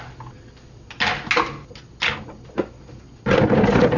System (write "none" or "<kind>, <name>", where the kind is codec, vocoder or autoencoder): none